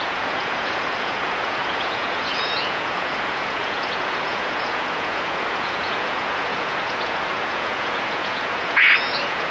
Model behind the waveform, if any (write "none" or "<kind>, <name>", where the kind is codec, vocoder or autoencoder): vocoder, Vocos